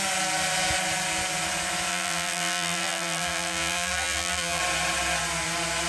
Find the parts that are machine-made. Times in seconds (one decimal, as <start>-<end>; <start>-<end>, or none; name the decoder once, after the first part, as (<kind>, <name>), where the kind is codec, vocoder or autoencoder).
1.9-4.6 (vocoder, BigVGAN v2)